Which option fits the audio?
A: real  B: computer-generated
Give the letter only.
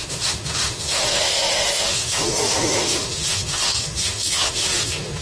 B